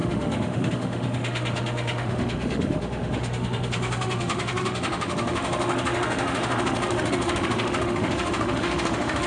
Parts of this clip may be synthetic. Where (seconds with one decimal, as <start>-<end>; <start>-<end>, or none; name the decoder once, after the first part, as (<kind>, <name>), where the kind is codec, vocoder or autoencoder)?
0.0-9.3 (autoencoder, DAC-VAE)